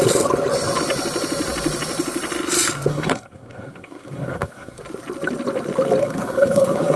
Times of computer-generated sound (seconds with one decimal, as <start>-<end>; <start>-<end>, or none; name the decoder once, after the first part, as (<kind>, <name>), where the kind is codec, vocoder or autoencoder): 2.9-4.8 (codec, SNAC); 6.0-7.0

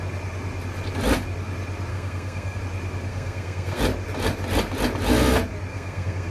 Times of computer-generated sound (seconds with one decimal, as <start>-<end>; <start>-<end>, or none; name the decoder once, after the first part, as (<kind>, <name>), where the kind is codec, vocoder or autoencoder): 1.9-2.6 (codec, SNAC); 3.1-3.8; 5.7-6.3